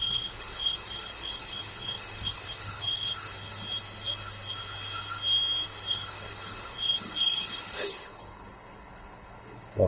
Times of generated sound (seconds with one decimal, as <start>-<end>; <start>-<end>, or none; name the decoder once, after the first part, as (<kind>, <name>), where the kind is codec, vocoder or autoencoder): 0.0-3.6 (codec, HILCodec); 5.9-9.9